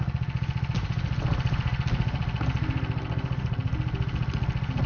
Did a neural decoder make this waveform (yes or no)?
no